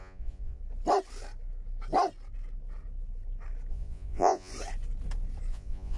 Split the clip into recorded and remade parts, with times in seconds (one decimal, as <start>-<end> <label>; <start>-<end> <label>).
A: 0.0-0.6 remade; 0.6-3.7 recorded; 3.7-4.5 remade; 4.5-5.5 recorded; 5.5-6.0 remade